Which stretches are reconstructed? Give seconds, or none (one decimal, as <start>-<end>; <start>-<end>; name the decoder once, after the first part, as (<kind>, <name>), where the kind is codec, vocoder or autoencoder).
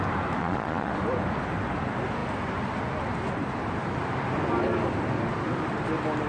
0.4-0.9 (vocoder, Vocos)